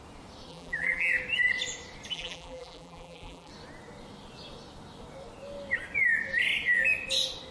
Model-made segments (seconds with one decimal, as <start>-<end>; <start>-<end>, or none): 0.5-1.1; 2.1-3.5